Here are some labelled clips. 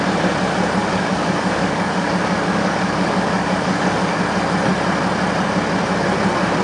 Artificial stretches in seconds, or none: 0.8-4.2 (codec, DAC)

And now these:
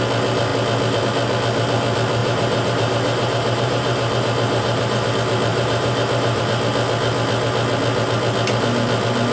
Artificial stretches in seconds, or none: 2.2-5.1 (vocoder, BigVGAN v2); 5.5-6.4

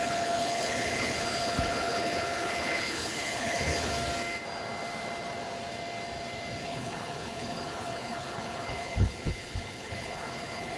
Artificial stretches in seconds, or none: 0.0-3.9 (codec, HILCodec); 6.6-10.8